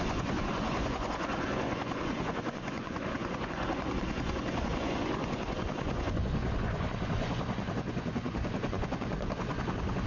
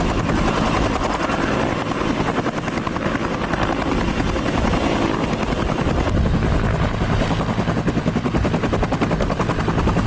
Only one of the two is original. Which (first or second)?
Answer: second